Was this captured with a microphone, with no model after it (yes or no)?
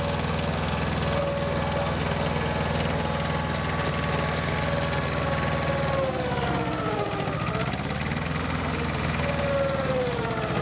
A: yes